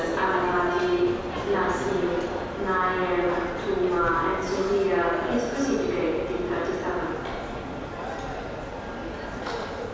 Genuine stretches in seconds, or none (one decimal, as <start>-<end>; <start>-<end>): 0.0-9.9

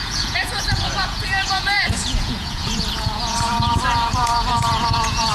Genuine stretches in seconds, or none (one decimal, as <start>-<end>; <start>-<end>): none

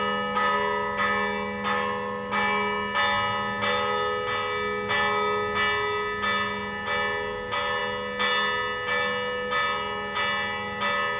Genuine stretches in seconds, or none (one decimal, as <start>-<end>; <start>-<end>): 0.0-11.2

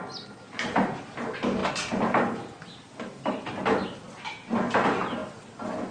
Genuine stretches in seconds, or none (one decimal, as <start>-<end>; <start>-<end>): 0.0-5.9

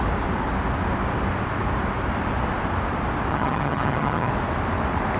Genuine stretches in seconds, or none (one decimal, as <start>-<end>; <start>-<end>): 0.0-3.3; 4.3-5.2

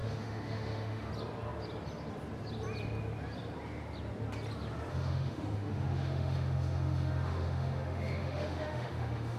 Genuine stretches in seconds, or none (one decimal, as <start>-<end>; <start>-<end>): 1.1-4.9

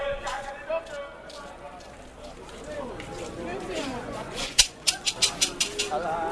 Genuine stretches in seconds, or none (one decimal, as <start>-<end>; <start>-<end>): 0.6-3.5; 5.1-6.3